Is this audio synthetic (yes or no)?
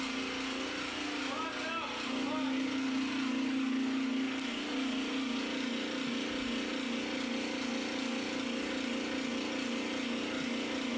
no